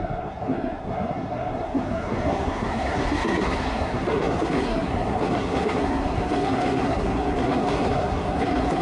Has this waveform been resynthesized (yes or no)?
yes